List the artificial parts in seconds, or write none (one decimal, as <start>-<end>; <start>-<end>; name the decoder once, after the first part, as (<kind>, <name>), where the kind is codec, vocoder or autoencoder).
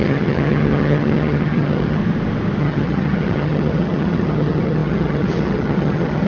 0.0-2.0 (vocoder, HiFi-GAN); 2.6-6.3